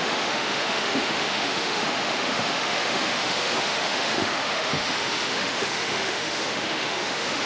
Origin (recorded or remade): remade